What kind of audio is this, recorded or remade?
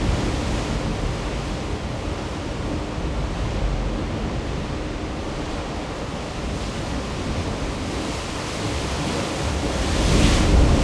recorded